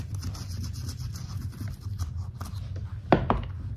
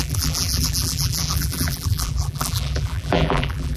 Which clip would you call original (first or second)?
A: first